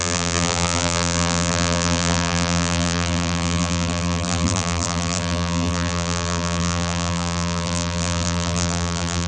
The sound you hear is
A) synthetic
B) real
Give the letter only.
A